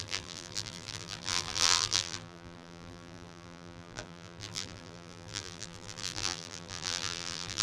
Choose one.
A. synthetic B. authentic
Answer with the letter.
A